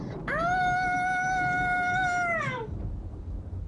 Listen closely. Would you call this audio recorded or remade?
recorded